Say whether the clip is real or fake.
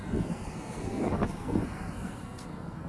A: fake